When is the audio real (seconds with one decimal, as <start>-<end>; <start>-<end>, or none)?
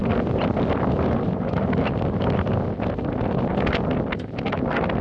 0.0-5.0